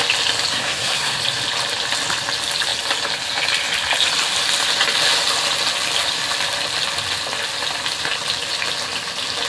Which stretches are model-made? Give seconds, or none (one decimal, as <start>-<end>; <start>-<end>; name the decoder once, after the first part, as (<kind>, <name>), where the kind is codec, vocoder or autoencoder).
0.5-1.2 (codec, SNAC)